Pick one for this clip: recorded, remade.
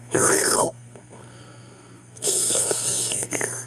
remade